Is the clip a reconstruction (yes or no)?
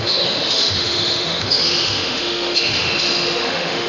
yes